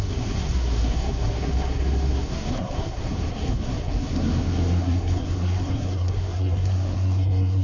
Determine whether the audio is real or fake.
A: fake